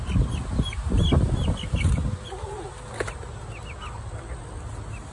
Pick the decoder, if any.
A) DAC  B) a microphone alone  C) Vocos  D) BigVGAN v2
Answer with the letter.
B